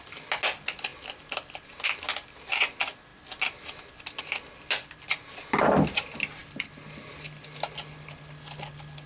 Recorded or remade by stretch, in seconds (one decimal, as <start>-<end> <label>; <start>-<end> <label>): 0.0-0.9 recorded; 0.9-1.8 remade; 1.8-9.1 recorded